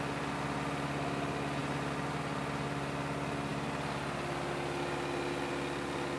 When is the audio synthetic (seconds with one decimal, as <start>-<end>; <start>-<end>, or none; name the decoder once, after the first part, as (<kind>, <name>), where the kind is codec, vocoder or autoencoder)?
none